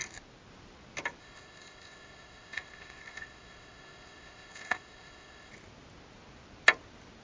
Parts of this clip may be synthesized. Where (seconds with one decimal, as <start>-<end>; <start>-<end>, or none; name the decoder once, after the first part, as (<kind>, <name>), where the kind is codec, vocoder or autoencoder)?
1.2-5.5 (codec, ZipCodec)